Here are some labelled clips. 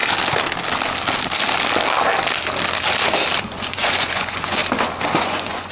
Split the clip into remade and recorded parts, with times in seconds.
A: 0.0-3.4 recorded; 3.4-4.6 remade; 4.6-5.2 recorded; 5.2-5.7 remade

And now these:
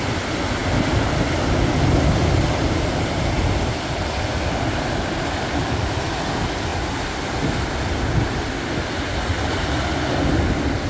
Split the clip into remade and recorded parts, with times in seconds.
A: 0.0-10.9 recorded

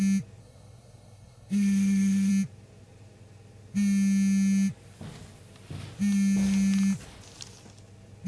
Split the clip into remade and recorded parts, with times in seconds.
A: 0.0-0.4 recorded; 0.4-2.3 remade; 2.3-8.3 recorded

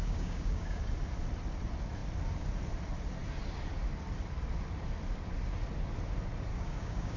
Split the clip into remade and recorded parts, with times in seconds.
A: 0.0-0.8 remade; 0.8-6.5 recorded; 6.5-7.2 remade

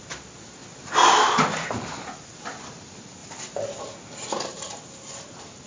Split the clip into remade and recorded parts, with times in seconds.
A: 0.0-3.2 recorded; 3.2-3.8 remade; 3.8-4.5 recorded; 4.5-5.1 remade; 5.1-5.7 recorded

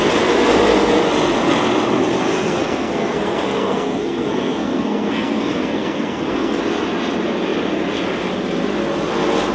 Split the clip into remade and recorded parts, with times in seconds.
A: 0.0-2.2 recorded; 2.2-6.6 remade; 6.6-9.5 recorded